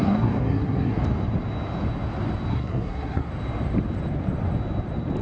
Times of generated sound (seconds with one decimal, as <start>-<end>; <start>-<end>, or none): 0.0-1.0; 2.5-3.3